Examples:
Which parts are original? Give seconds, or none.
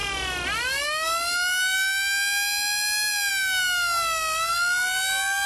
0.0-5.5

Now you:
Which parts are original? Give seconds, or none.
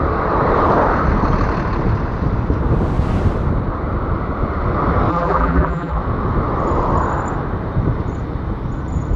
0.0-5.1; 6.0-9.2